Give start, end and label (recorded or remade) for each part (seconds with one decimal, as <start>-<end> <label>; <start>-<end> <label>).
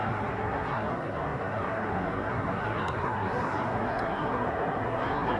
0.0-5.4 remade